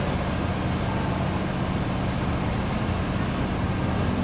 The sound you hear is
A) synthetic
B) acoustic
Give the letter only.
B